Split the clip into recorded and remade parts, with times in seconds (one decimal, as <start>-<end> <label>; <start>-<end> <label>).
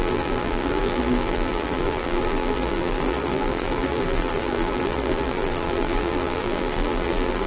0.0-7.5 remade